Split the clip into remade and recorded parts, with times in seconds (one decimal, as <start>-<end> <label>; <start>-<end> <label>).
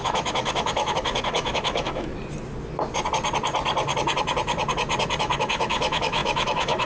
0.0-2.1 remade; 2.1-5.2 recorded; 5.2-6.9 remade